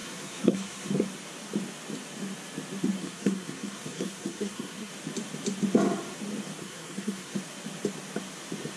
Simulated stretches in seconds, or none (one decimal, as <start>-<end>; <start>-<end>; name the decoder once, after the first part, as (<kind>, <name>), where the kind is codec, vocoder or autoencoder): 0.0-0.9 (codec, SNAC); 3.0-4.9; 6.6-7.4